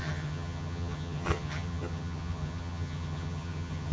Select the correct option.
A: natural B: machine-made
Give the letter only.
B